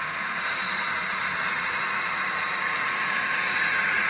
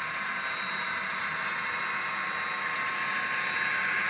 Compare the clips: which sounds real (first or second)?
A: second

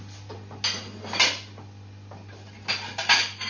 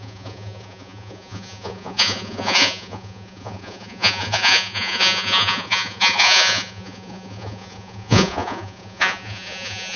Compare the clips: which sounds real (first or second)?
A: first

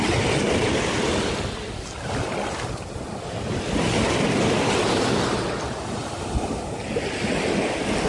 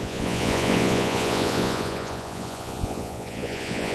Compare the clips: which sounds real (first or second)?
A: first